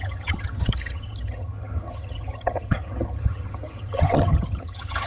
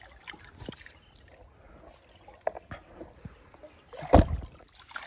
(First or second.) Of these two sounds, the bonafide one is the second